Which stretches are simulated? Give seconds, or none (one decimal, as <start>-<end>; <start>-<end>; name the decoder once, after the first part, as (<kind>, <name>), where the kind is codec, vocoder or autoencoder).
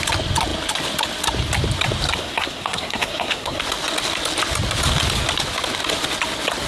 2.2-3.6 (codec, SNAC)